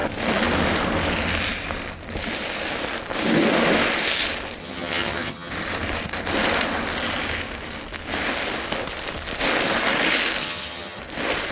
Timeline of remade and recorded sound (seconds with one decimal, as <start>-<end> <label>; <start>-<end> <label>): 0.0-4.6 recorded; 4.6-5.5 remade; 5.5-10.4 recorded; 10.4-11.0 remade; 11.0-11.5 recorded